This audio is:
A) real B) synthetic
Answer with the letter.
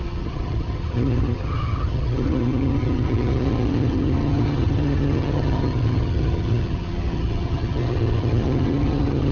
B